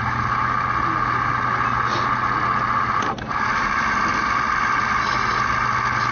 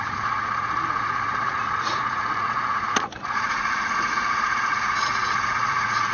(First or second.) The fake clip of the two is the second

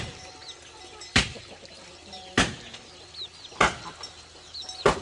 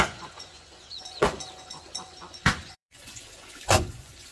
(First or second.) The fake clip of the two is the second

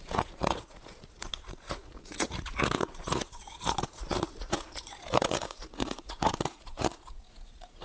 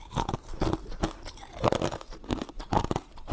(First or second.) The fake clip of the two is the first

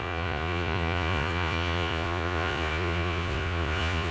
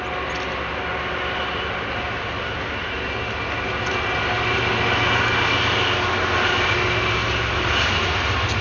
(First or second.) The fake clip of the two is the first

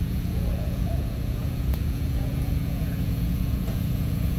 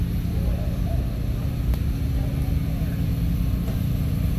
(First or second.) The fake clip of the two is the first